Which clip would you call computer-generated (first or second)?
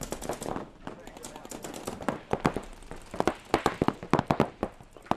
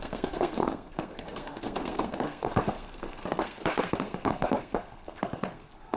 second